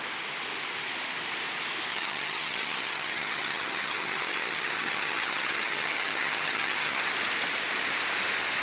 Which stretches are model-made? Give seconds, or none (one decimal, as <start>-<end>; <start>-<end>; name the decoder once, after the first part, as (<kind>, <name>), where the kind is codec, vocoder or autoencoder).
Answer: 1.9-7.0 (vocoder, HiFi-GAN)